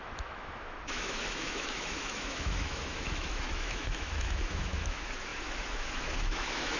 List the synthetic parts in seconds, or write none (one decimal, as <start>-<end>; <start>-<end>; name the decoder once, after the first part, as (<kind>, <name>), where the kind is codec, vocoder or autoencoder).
0.0-6.8 (autoencoder, DAC-VAE)